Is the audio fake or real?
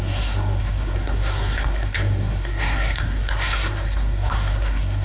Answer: fake